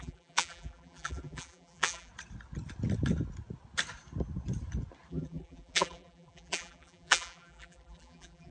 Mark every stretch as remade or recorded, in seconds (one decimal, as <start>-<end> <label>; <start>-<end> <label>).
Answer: 0.0-2.1 remade; 2.1-5.1 recorded; 5.1-8.5 remade

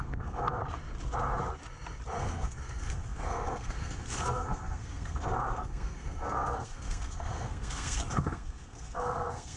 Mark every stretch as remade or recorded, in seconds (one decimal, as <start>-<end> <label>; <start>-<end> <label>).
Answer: 0.0-0.6 remade; 0.6-2.2 recorded; 2.2-9.6 remade

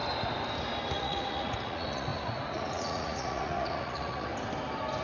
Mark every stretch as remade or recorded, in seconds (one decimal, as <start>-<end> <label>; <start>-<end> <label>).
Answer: 0.0-0.9 recorded; 0.9-4.3 remade; 4.3-5.0 recorded

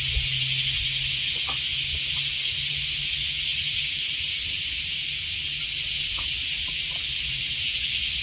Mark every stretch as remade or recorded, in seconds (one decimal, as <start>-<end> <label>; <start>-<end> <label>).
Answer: 0.0-8.2 recorded

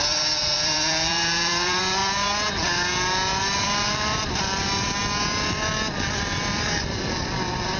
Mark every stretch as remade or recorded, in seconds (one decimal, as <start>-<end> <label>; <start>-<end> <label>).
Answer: 0.0-2.0 remade; 2.0-3.4 recorded; 3.4-5.0 remade; 5.0-6.4 recorded; 6.4-7.8 remade

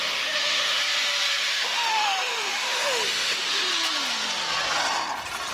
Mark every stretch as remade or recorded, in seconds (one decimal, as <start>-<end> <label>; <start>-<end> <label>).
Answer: 0.0-0.8 remade; 0.8-1.4 recorded; 1.4-3.7 remade; 3.7-5.5 recorded

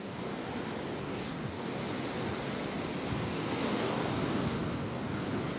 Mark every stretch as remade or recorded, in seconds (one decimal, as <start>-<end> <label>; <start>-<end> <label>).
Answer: 0.0-0.4 remade; 0.4-1.0 recorded; 1.0-1.8 remade; 1.8-3.1 recorded; 3.1-5.6 remade